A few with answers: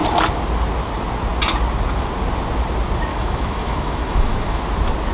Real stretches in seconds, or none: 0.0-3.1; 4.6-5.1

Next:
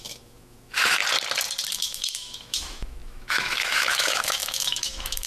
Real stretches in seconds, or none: 1.0-1.7

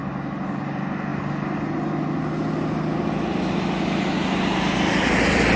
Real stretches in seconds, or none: 0.0-5.6

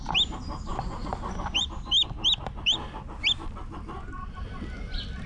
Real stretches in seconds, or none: 0.0-5.3

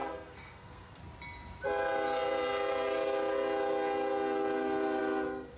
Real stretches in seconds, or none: 1.0-5.6

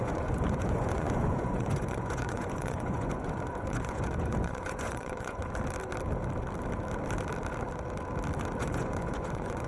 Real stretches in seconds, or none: 5.4-8.6

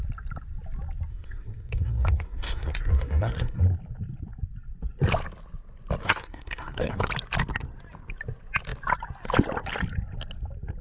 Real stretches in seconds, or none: 0.0-1.1; 3.6-6.0; 7.1-10.8

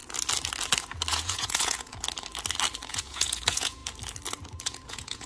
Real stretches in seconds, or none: 0.0-1.1; 1.9-2.9; 3.8-4.6